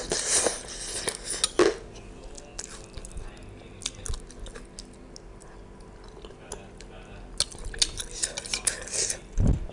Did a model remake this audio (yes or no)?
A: no